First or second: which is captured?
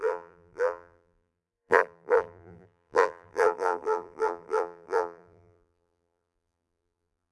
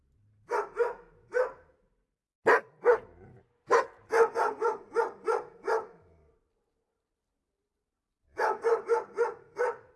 second